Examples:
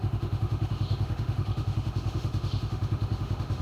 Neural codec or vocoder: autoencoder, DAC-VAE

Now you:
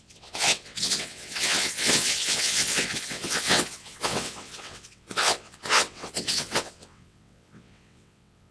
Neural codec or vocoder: vocoder, WaveNeXt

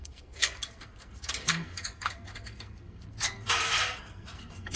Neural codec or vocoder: codec, SNAC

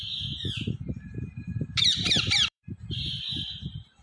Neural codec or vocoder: vocoder, BigVGAN v2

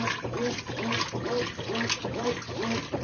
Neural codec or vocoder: none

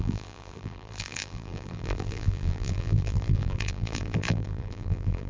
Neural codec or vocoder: vocoder, BigVGAN v2